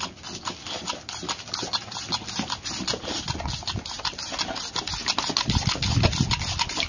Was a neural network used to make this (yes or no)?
no